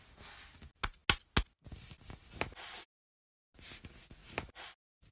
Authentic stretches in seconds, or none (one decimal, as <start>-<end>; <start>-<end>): 0.0-5.1